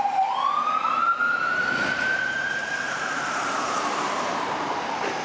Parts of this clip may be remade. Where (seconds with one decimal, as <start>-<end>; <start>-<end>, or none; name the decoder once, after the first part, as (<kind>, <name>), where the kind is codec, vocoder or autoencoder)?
0.0-0.4 (vocoder, BigVGAN v2); 0.9-5.2